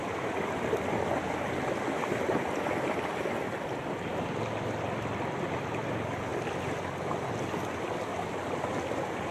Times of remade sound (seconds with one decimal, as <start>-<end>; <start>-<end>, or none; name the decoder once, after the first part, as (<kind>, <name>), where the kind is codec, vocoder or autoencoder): none